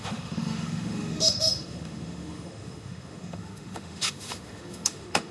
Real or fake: fake